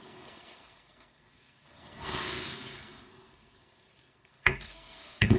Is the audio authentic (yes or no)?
no